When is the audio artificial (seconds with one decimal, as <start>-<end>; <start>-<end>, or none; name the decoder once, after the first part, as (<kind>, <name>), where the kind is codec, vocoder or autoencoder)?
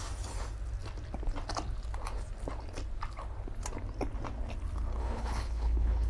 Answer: 5.0-6.1 (codec, HILCodec)